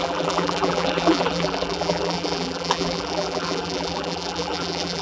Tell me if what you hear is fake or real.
fake